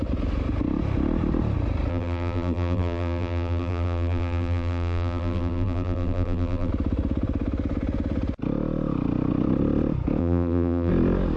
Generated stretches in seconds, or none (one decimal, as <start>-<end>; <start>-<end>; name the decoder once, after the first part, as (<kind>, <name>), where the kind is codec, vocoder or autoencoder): 1.9-6.7 (vocoder, BigVGAN v2); 10.2-10.9